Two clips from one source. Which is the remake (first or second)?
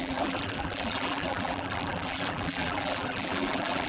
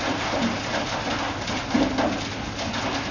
first